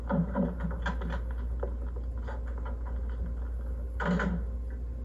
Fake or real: real